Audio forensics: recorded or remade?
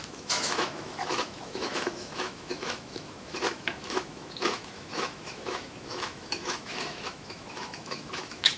remade